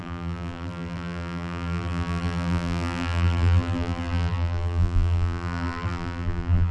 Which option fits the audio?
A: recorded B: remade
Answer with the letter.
B